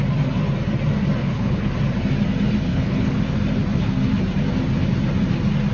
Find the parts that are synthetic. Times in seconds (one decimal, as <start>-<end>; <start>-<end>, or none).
1.2-1.7; 2.7-3.2